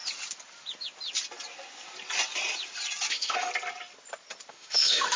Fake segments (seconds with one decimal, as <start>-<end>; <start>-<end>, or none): 3.1-3.5; 4.5-5.2